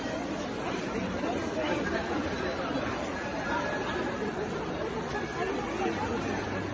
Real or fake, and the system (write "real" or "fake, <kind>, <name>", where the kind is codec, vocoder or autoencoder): fake, vocoder, BigVGAN v2